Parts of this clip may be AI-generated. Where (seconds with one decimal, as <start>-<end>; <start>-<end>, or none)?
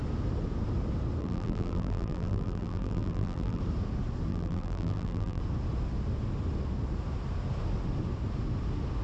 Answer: 1.2-3.6; 4.3-5.4